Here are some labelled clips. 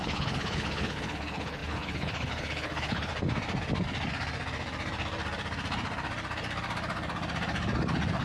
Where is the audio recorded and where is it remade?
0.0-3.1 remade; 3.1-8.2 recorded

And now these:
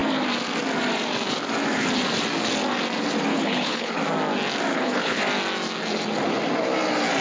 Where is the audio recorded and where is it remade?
0.0-3.3 recorded; 3.3-4.0 remade; 4.0-4.7 recorded; 4.7-5.2 remade; 5.2-7.2 recorded

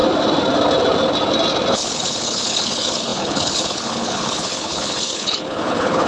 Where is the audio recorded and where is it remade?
0.0-1.7 recorded; 1.7-6.1 remade

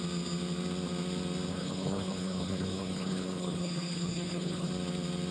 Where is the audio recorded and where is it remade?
0.0-1.5 recorded; 1.5-4.7 remade; 4.7-5.3 recorded

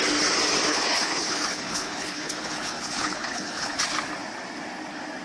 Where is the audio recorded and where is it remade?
0.0-0.7 recorded; 0.7-3.8 remade; 3.8-5.2 recorded